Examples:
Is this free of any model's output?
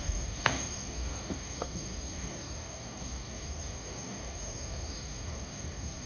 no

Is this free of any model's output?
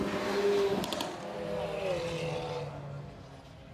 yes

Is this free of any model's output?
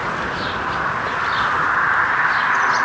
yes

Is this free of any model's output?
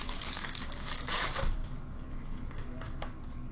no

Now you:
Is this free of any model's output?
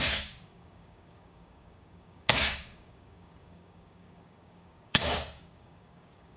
no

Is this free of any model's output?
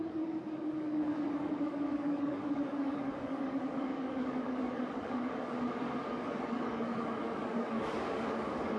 no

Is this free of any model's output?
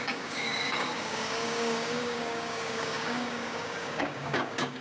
no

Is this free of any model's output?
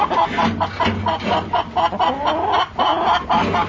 yes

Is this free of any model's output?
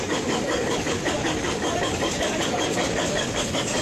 no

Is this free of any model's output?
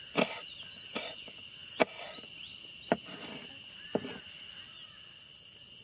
yes